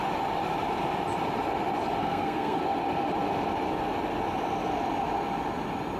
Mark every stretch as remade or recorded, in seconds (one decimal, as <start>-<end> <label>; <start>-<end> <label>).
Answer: 0.0-2.0 recorded; 2.0-2.6 remade; 2.6-6.0 recorded